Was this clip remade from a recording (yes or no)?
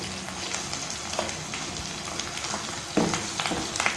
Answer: no